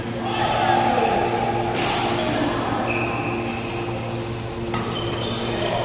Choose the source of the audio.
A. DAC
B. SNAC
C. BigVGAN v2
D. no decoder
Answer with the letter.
D